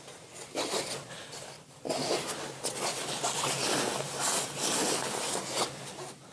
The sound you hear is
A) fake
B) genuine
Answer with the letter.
B